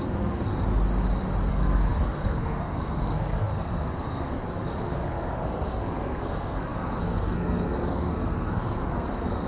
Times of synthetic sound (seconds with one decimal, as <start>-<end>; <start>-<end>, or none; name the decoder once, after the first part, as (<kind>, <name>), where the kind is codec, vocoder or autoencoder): 0.0-0.6 (codec, SNAC); 1.5-9.5